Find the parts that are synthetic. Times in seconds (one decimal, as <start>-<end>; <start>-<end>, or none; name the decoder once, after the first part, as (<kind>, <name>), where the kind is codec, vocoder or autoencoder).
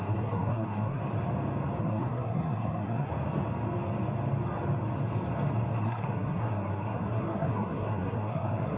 0.0-1.0 (codec, SNAC); 1.8-3.1; 5.8-8.8